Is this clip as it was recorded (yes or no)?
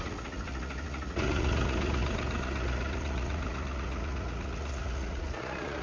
no